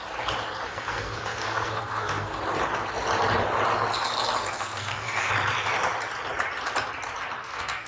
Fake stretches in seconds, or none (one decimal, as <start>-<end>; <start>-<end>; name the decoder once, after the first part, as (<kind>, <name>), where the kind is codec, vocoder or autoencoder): 0.7-2.4 (codec, SNAC); 4.4-5.3; 7.4-7.9